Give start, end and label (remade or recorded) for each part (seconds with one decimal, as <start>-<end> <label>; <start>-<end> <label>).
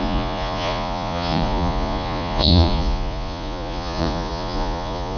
0.0-5.2 remade